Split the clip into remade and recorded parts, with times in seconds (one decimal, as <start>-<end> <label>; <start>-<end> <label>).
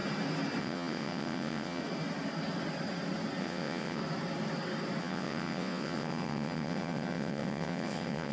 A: 0.0-0.6 recorded; 0.6-1.8 remade; 1.8-3.4 recorded; 3.4-4.0 remade; 4.0-5.0 recorded; 5.0-8.3 remade